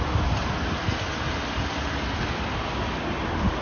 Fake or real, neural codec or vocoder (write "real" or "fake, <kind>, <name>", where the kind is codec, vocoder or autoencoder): real